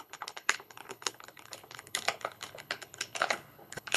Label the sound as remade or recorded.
remade